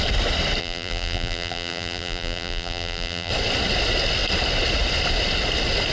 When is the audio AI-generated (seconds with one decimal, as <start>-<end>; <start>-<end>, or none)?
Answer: 0.6-3.3